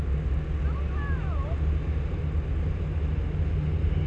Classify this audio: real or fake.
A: real